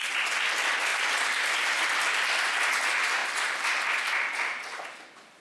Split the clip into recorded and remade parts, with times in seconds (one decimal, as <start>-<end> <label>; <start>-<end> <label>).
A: 0.0-0.9 recorded; 0.9-2.7 remade; 2.7-3.2 recorded; 3.2-3.8 remade; 3.8-5.4 recorded